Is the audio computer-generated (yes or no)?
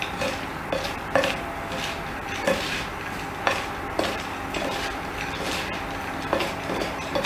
yes